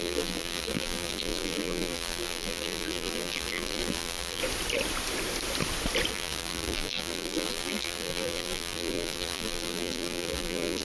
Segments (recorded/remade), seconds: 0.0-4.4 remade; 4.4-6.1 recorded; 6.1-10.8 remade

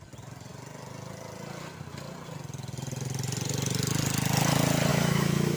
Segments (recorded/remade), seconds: 0.0-4.9 recorded; 4.9-5.6 remade